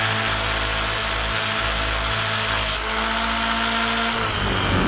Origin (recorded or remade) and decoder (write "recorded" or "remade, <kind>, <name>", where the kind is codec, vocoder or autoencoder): recorded